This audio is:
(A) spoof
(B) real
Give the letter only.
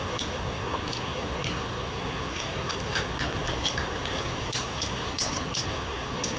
A